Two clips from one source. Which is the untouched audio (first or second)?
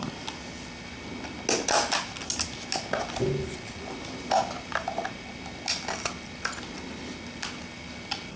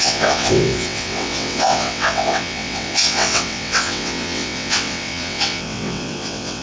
first